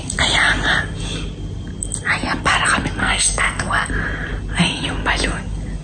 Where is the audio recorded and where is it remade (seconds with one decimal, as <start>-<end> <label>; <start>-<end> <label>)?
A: 0.0-3.0 recorded; 3.0-3.9 remade; 3.9-5.8 recorded